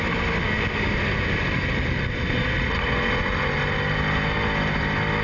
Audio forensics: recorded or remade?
recorded